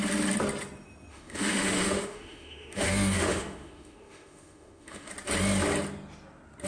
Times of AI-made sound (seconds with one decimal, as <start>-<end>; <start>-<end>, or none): 1.1-5.1

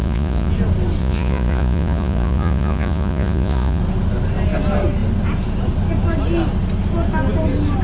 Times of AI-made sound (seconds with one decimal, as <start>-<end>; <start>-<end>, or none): 0.0-0.5; 1.0-3.8

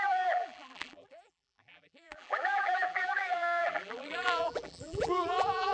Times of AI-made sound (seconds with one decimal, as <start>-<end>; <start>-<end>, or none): 0.0-5.7

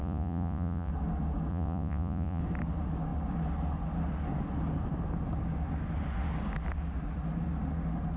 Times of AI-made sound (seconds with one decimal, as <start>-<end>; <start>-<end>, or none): 0.0-0.9; 1.5-2.4

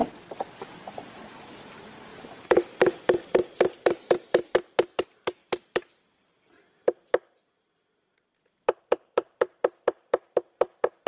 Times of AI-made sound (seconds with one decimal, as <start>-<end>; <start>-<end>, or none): 0.6-5.4; 8.8-11.1

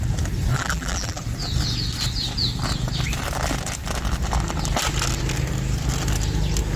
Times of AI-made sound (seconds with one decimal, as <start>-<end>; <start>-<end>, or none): 0.5-1.2